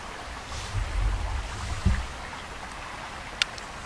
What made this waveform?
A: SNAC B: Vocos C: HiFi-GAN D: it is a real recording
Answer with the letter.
D